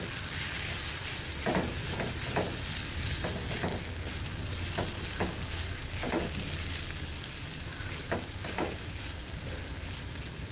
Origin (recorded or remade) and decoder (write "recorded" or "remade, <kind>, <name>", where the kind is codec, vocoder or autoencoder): recorded